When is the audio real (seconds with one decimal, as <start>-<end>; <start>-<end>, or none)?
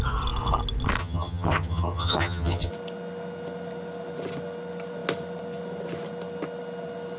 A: 0.0-1.0; 2.7-7.2